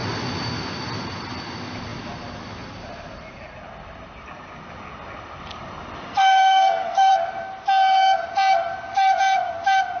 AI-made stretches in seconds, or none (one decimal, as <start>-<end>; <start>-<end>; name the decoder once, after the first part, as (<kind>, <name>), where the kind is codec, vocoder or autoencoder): 6.1-7.1 (codec, SNAC)